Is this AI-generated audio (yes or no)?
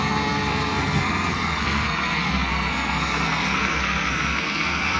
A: yes